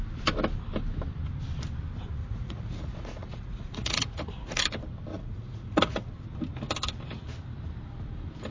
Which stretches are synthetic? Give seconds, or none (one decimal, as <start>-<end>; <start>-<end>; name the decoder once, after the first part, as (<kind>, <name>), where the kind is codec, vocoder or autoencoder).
2.2-4.6 (vocoder, Vocos); 5.1-6.1